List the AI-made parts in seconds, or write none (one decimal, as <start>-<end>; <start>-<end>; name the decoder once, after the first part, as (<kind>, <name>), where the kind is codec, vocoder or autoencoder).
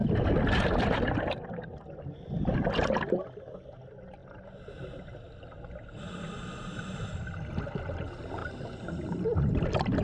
none